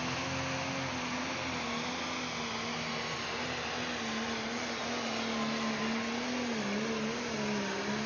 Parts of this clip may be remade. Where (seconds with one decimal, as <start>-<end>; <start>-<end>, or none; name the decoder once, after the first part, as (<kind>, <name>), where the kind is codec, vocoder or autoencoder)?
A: none